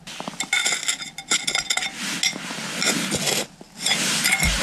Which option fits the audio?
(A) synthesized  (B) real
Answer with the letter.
B